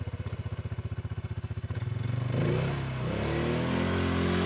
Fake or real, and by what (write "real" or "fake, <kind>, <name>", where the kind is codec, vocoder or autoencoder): real